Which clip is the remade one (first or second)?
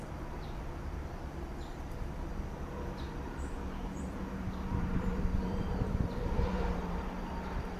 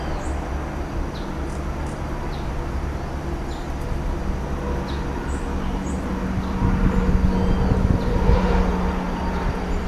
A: first